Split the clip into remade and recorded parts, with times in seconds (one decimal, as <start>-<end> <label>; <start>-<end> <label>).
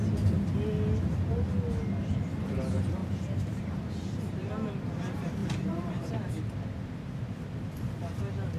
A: 0.0-3.0 recorded; 3.0-4.5 remade; 4.5-5.4 recorded; 5.4-6.1 remade; 6.1-8.6 recorded